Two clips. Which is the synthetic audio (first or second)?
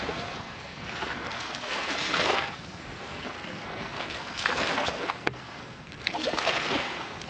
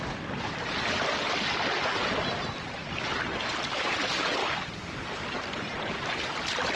first